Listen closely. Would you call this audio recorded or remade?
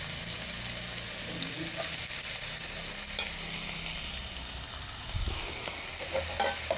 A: recorded